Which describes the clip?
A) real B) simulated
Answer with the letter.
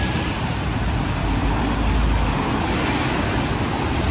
A